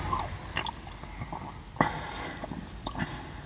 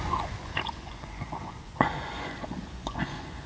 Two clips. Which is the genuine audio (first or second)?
first